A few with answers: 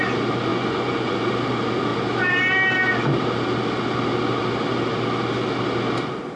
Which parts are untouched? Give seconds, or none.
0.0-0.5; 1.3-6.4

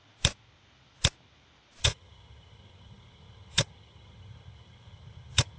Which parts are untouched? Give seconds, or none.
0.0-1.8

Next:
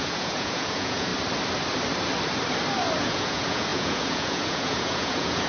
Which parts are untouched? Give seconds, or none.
1.1-3.0

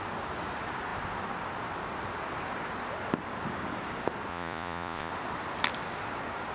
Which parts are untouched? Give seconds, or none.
0.0-4.3; 5.1-6.5